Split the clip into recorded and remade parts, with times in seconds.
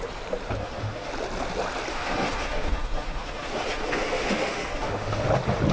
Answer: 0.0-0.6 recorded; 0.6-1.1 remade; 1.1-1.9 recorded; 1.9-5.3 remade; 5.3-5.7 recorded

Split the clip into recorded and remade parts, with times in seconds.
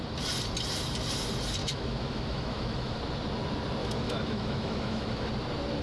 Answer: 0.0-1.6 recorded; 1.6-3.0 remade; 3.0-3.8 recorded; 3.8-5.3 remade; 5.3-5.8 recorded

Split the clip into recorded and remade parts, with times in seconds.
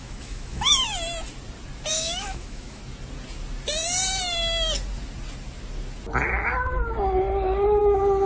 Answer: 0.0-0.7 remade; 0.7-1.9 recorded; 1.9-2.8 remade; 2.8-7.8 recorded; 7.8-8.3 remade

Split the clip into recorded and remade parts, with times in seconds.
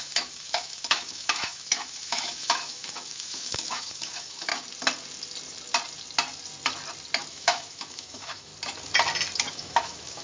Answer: 0.0-4.5 remade; 4.5-7.3 recorded; 7.3-8.5 remade; 8.5-9.5 recorded; 9.5-10.2 remade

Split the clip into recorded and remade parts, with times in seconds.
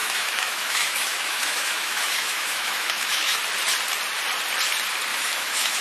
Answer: 0.0-3.4 remade; 3.4-5.1 recorded; 5.1-5.8 remade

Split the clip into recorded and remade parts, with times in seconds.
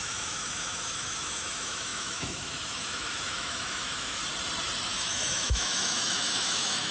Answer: 0.0-4.2 remade; 4.2-4.9 recorded; 4.9-6.9 remade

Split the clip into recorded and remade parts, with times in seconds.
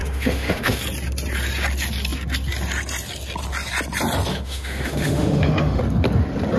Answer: 0.0-0.8 remade; 0.8-4.3 recorded; 4.3-5.8 remade; 5.8-6.6 recorded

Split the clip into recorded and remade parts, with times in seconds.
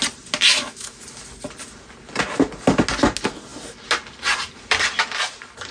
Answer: 0.0-0.5 recorded; 0.5-1.0 remade; 1.0-5.7 recorded